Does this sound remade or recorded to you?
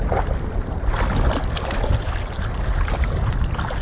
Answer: recorded